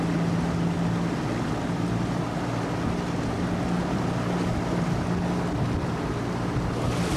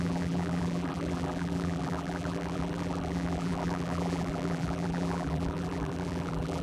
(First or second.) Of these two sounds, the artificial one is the second